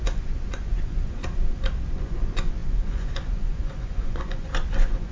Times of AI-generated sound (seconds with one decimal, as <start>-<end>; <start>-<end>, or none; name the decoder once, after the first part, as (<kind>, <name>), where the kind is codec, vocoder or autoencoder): 0.0-1.2 (vocoder, Vocos); 2.0-5.1